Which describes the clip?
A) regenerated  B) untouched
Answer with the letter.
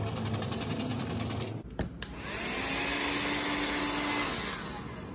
B